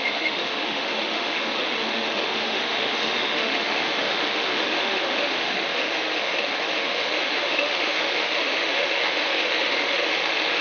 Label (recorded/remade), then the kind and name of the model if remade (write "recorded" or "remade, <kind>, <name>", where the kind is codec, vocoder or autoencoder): remade, autoencoder, DAC-VAE